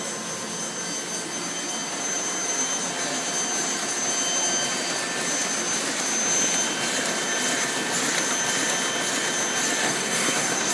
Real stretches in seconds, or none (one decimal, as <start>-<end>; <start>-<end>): 0.0-9.8